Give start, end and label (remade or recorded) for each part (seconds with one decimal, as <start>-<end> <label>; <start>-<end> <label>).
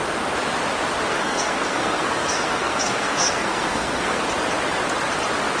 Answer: 0.0-1.1 recorded; 1.1-4.2 remade; 4.2-5.6 recorded